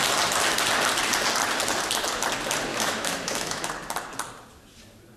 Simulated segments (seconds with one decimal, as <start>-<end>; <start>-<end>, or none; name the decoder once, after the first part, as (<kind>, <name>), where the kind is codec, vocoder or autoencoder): 2.7-3.7 (autoencoder, DAC-VAE)